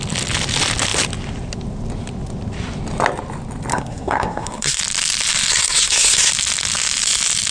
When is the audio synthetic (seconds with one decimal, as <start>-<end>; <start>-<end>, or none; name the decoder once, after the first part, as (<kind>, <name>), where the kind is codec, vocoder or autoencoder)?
3.7-4.8 (codec, SNAC); 5.5-6.3